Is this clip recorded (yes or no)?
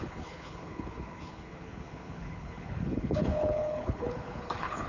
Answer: no